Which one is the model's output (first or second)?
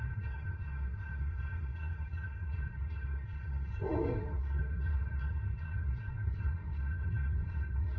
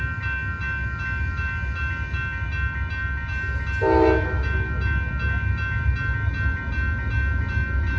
first